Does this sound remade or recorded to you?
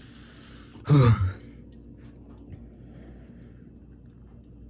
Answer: recorded